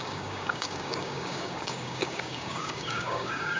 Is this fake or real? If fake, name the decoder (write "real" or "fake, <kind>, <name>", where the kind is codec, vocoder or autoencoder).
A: fake, codec, DAC